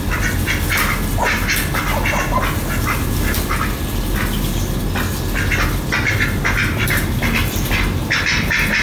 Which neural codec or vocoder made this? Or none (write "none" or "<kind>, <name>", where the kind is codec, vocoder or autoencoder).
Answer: none